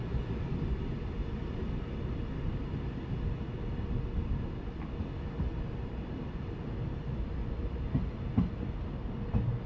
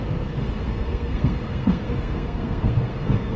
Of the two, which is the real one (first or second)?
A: first